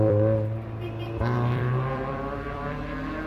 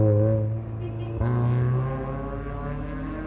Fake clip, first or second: first